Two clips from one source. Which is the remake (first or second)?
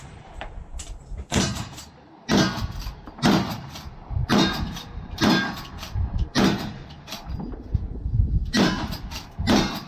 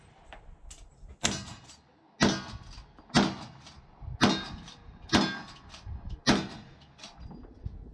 first